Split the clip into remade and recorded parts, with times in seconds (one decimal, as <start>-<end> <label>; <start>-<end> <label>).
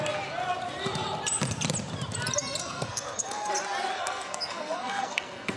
0.0-2.6 recorded; 2.6-3.5 remade; 3.5-3.9 recorded; 3.9-5.6 remade